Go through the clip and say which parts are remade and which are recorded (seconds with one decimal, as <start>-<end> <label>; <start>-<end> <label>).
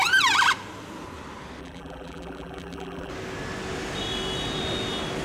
0.0-1.6 recorded; 1.6-3.1 remade; 3.1-5.2 recorded